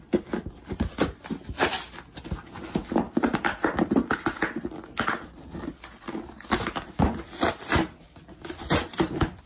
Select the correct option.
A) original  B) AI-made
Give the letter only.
A